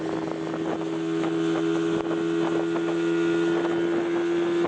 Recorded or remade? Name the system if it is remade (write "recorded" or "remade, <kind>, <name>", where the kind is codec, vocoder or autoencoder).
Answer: recorded